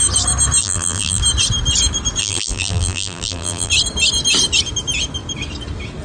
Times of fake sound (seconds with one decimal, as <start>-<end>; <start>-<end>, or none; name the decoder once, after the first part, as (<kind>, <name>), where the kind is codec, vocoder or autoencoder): 0.6-1.2 (vocoder, BigVGAN v2); 2.2-3.7